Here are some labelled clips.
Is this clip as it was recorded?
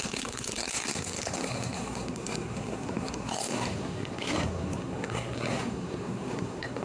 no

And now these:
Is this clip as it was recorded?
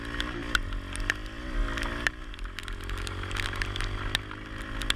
yes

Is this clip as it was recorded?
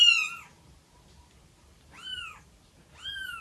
yes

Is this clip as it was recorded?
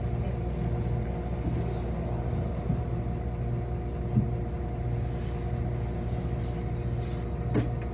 yes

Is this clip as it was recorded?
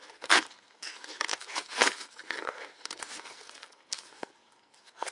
no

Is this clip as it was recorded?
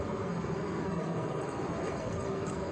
no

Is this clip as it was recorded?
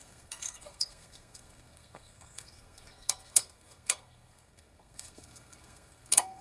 no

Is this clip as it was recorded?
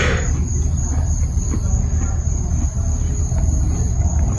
yes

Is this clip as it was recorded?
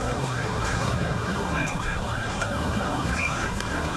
no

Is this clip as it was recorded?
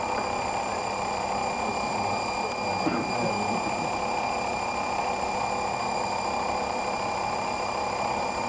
yes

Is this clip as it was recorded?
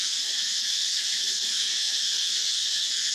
no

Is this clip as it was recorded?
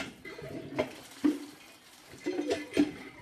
yes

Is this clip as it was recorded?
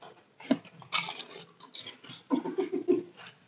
yes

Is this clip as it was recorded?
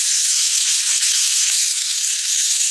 no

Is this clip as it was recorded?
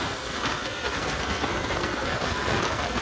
no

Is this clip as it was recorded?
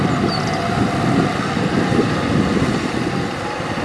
yes